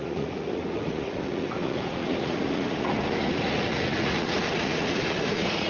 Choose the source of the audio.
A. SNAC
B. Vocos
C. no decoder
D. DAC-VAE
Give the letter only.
B